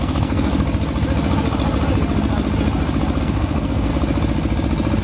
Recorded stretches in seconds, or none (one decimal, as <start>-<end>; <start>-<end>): 0.5-3.2; 3.9-5.0